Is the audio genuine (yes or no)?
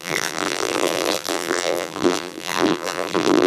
no